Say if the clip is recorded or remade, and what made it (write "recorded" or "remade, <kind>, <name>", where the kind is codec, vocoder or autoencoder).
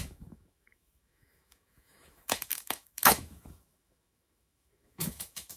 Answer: remade, autoencoder, DAC-VAE